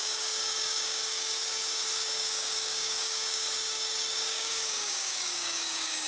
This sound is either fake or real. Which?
fake